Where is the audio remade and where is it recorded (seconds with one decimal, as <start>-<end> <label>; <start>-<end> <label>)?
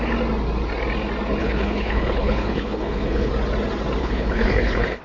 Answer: 0.0-1.4 recorded; 1.4-3.3 remade; 3.3-4.0 recorded; 4.0-5.0 remade